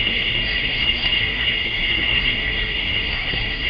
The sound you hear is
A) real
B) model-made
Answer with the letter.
B